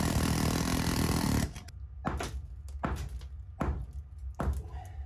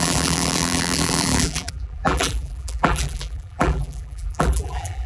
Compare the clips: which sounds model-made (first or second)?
second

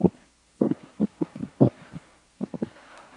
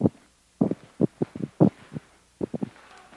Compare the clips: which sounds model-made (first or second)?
first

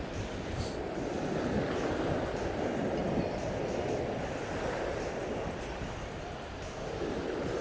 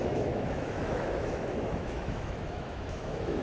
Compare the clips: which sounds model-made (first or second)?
second